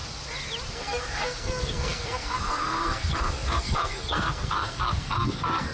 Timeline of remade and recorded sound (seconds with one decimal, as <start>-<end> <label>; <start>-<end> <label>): 0.0-0.7 recorded; 0.7-5.7 remade